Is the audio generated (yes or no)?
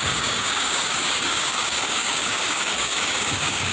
yes